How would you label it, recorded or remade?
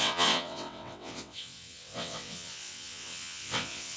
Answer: remade